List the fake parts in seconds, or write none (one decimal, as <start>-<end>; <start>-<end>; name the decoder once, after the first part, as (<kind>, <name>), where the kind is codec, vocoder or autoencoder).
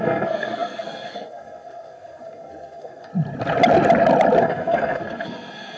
0.0-3.1 (codec, SNAC); 4.4-5.8